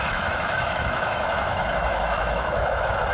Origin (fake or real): fake